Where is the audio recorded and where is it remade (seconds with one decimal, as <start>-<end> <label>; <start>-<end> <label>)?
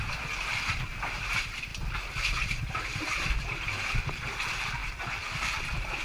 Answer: 0.0-1.7 remade; 1.7-2.3 recorded; 2.3-6.0 remade